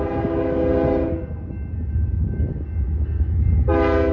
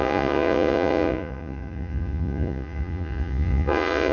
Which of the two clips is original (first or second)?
first